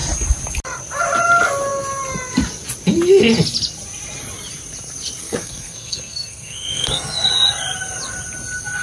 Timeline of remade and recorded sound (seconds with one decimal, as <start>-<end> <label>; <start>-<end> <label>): 0.0-5.2 recorded; 5.2-7.3 remade; 7.3-8.8 recorded